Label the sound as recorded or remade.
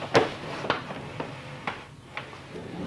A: recorded